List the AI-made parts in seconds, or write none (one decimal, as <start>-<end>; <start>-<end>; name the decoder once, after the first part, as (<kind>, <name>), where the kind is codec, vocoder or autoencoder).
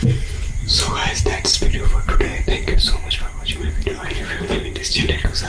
none